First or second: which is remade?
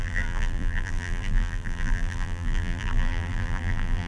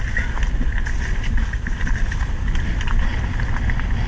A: first